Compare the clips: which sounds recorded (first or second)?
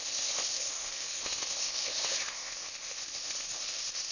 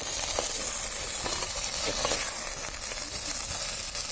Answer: second